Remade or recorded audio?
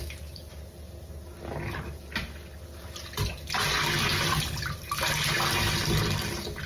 recorded